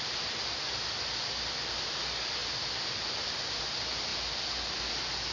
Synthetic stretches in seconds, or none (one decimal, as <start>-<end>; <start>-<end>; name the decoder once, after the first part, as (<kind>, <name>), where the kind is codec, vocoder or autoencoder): none